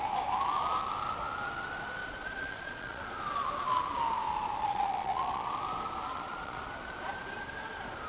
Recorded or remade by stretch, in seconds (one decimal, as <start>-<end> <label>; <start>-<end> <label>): 0.0-2.0 recorded; 2.0-3.0 remade; 3.0-4.6 recorded; 4.6-5.6 remade; 5.6-6.1 recorded; 6.1-6.6 remade; 6.6-8.1 recorded